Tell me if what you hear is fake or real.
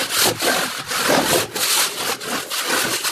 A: real